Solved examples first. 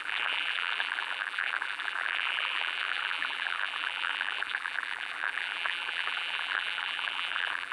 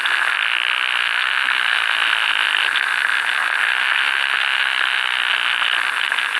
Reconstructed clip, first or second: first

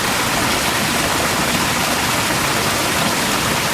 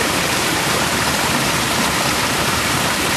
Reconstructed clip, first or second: second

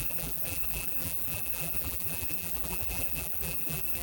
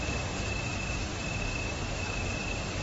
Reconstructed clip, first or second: first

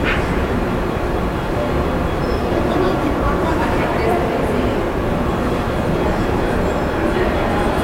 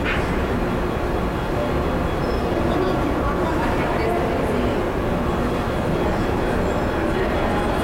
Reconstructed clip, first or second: first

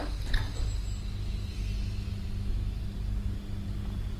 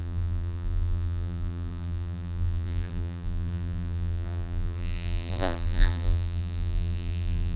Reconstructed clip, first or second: second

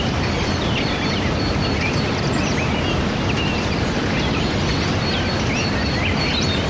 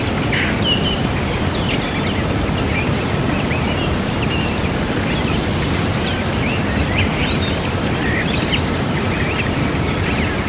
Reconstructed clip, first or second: second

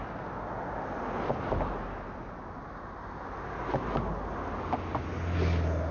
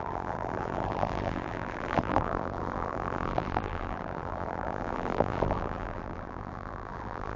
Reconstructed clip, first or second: second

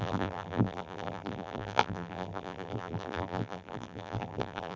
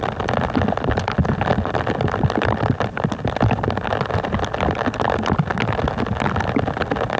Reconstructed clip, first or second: first